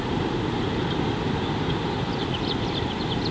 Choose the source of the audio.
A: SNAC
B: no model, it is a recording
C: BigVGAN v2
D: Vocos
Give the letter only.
C